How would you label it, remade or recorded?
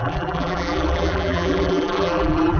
remade